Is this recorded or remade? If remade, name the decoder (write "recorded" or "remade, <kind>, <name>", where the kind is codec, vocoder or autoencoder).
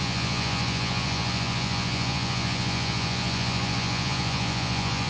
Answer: remade, vocoder, Vocos